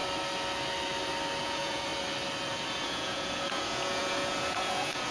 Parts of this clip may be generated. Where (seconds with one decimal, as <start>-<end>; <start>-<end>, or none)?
1.4-1.9; 2.7-5.1